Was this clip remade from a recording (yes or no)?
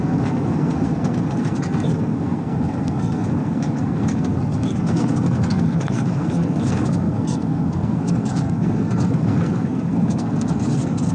yes